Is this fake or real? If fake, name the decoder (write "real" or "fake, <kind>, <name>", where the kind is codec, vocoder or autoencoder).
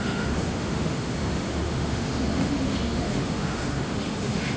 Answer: fake, autoencoder, DAC-VAE